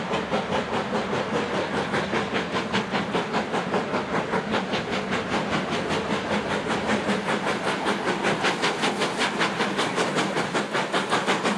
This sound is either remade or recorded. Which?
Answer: recorded